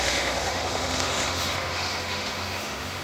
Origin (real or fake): fake